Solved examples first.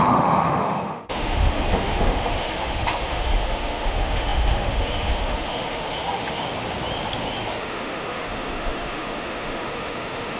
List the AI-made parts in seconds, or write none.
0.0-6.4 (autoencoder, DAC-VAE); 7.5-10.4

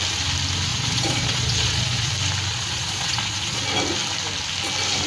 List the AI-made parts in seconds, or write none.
0.7-2.1 (vocoder, Vocos); 2.5-3.6

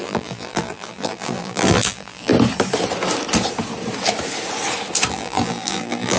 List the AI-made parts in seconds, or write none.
0.0-2.3 (vocoder, BigVGAN v2); 5.1-6.2

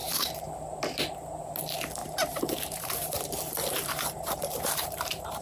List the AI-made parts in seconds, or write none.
0.0-0.8 (vocoder, BigVGAN v2); 2.0-5.4

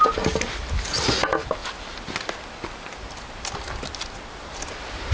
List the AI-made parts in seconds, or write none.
none

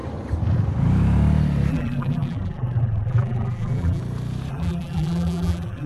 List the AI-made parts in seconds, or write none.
1.7-4.0 (vocoder, BigVGAN v2); 4.5-5.9

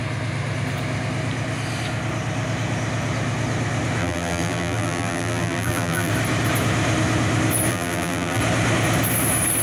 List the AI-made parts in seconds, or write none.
4.0-6.1 (vocoder, BigVGAN v2); 7.7-8.4